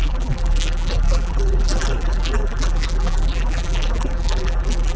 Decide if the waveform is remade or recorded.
remade